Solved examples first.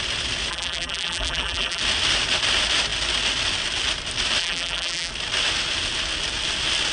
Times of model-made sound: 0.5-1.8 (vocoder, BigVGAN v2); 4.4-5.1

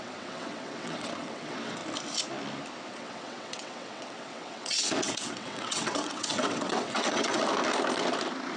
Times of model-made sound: 0.0-1.8 (vocoder, WaveNeXt); 2.9-7.4

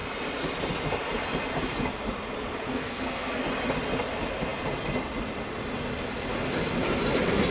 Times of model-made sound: 2.7-3.4 (codec, SNAC)

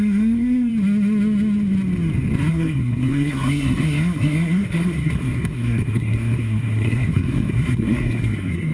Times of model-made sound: 0.0-0.7 (codec, SNAC); 2.5-8.7

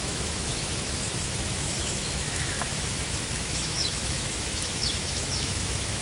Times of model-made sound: 0.0-6.0 (autoencoder, DAC-VAE)

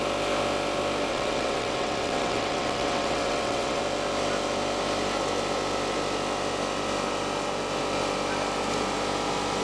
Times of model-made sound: 1.1-3.8 (vocoder, WaveNeXt)

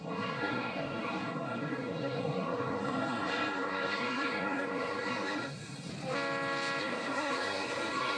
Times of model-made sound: 0.0-5.9 (codec, SNAC); 6.8-8.2